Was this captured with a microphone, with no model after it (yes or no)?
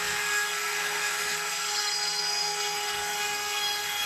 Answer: no